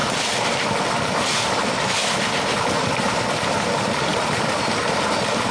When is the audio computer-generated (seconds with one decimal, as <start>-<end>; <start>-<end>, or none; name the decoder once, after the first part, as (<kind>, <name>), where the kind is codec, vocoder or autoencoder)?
0.0-1.2 (vocoder, BigVGAN v2); 2.0-2.9; 4.1-4.9